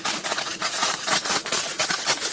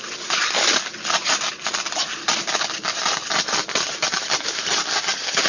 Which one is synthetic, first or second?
first